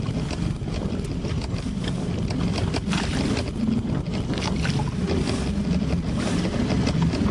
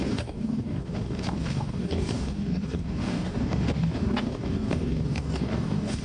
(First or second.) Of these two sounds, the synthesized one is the second